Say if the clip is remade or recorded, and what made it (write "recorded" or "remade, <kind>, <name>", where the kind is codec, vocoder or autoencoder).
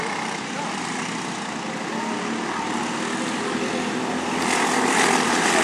recorded